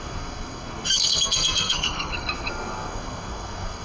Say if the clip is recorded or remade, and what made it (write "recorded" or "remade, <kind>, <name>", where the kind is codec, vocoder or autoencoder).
remade, codec, SNAC